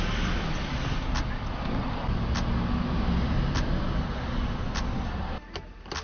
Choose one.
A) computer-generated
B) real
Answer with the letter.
B